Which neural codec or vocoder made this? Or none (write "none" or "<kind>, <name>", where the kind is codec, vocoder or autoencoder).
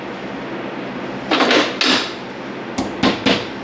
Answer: none